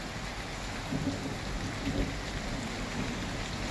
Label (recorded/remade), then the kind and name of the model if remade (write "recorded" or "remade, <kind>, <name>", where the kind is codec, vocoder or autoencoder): recorded